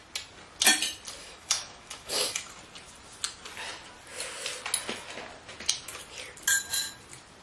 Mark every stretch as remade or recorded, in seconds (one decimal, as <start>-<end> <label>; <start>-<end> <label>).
0.0-1.2 recorded; 1.2-2.5 remade; 2.5-7.4 recorded